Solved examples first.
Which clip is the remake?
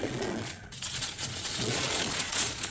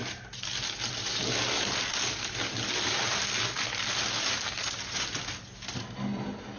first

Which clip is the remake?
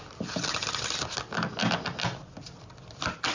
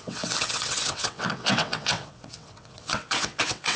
second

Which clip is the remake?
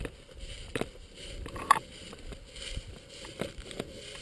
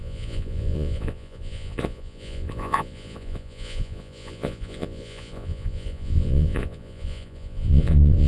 second